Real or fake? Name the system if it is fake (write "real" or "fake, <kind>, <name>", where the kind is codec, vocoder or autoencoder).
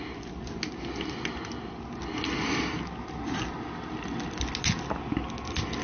real